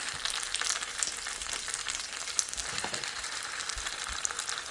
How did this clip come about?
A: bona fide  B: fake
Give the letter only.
A